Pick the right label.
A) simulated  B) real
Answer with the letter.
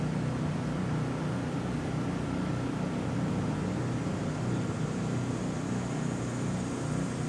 B